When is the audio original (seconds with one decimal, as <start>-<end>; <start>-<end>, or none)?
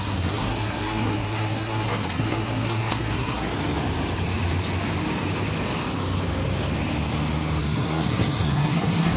3.5-7.6